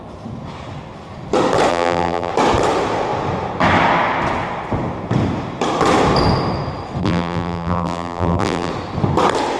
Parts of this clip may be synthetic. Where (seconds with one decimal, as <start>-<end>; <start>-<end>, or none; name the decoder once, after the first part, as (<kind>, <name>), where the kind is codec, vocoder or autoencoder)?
1.7-2.3 (vocoder, BigVGAN v2); 7.0-8.7